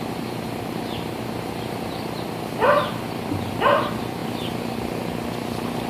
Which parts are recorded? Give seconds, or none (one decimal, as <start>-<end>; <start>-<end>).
0.0-5.9